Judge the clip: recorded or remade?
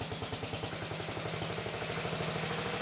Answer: recorded